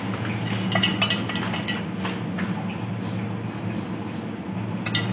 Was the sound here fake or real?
real